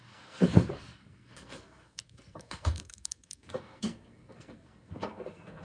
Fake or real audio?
fake